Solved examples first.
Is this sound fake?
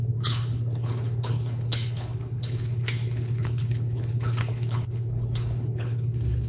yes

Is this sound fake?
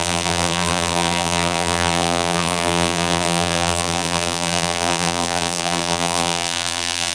yes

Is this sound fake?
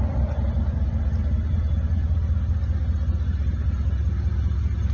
no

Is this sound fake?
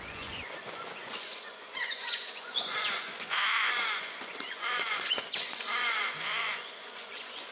yes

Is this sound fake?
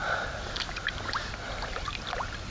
no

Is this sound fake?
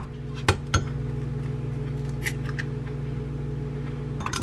no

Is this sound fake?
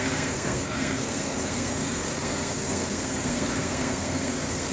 yes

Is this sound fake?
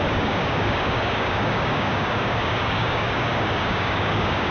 yes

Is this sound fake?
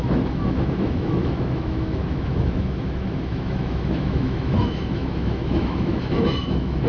yes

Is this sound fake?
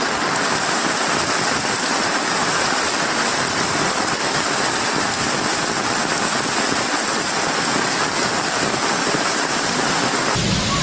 no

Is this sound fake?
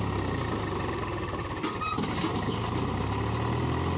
no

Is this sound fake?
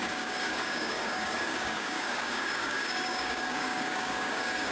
yes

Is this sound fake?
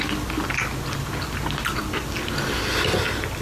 no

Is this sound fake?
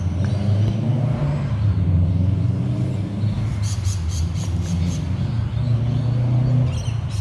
no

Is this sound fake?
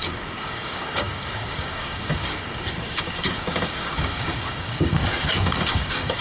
yes